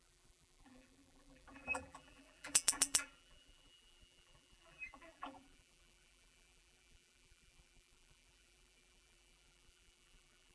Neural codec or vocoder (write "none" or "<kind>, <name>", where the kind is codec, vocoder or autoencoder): vocoder, BigVGAN v2